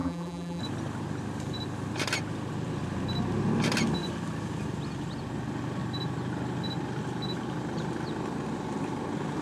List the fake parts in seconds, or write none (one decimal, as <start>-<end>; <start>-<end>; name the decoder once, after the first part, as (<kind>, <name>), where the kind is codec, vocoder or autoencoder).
0.0-0.6 (vocoder, BigVGAN v2)